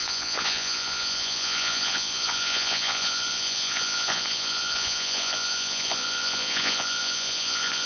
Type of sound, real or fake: fake